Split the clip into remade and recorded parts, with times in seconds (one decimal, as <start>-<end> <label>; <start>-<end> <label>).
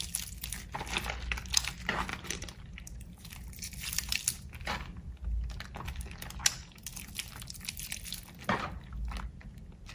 0.0-2.1 recorded; 2.1-4.2 remade; 4.2-9.9 recorded